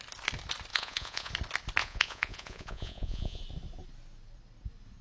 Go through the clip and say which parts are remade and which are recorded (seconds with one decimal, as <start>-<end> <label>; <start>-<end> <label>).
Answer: 0.0-0.7 recorded; 0.7-1.3 remade; 1.3-1.8 recorded; 1.8-3.4 remade; 3.4-5.0 recorded